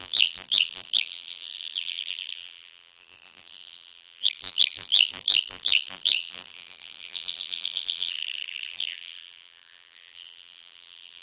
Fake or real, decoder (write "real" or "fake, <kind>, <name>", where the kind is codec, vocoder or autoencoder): fake, vocoder, BigVGAN v2